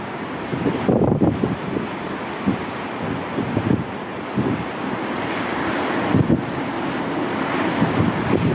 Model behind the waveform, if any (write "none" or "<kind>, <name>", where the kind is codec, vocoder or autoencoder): none